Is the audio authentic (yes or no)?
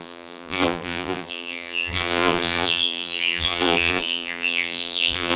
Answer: no